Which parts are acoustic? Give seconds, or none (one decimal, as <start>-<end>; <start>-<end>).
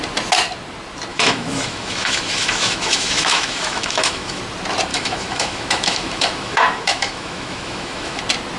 0.0-1.1; 4.4-4.9; 8.2-8.6